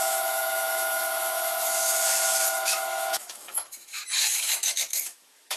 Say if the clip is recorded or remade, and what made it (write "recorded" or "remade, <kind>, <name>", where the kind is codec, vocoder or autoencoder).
remade, autoencoder, DAC-VAE